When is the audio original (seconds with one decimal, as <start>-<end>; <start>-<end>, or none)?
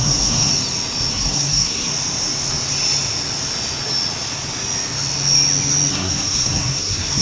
0.5-1.1; 1.9-5.9